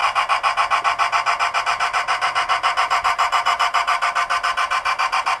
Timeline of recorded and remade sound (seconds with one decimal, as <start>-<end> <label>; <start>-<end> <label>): 0.0-1.6 recorded; 1.6-3.9 remade; 3.9-5.4 recorded